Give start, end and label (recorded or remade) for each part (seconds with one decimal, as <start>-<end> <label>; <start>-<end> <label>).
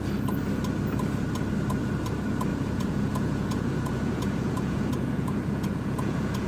0.0-2.5 recorded; 2.5-6.5 remade